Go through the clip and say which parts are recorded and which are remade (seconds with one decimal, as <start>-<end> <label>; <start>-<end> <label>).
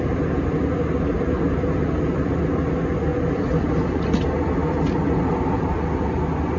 0.0-3.1 recorded; 3.1-4.0 remade; 4.0-6.6 recorded